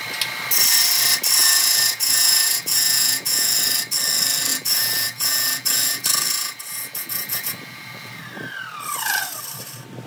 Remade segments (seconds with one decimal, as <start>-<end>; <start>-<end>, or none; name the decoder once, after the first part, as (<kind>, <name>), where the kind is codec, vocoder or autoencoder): 1.4-3.6 (vocoder, Vocos); 4.5-8.2